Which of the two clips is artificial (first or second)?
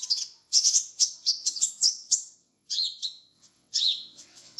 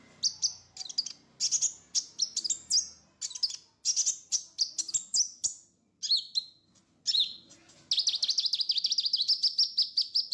first